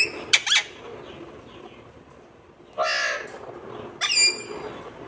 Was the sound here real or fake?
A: real